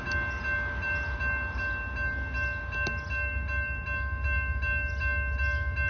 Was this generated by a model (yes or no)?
no